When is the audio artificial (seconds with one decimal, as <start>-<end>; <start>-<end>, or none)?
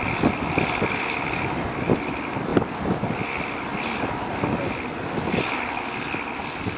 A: none